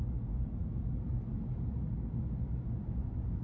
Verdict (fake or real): real